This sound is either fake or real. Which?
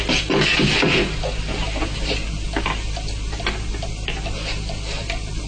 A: real